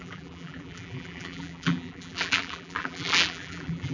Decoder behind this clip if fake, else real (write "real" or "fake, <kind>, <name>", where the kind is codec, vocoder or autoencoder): fake, vocoder, BigVGAN v2